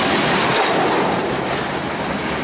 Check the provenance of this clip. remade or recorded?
recorded